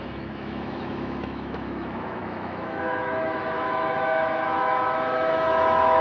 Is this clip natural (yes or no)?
no